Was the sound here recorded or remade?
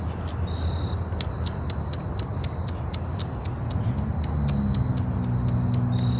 recorded